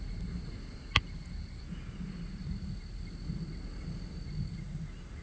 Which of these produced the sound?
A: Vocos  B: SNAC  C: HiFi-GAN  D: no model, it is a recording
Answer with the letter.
D